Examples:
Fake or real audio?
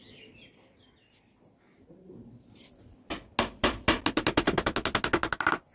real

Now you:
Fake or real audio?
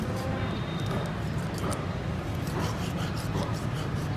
real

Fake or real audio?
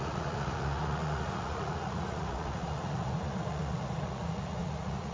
fake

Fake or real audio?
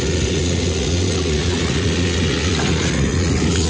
fake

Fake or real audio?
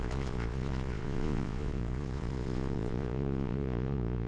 fake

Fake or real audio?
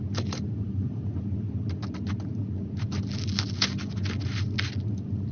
real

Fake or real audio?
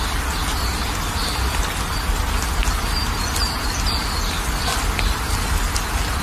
real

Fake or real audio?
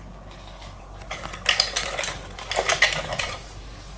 real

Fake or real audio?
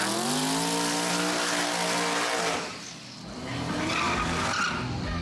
real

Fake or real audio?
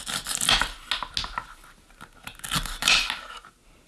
real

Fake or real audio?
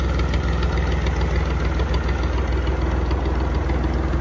real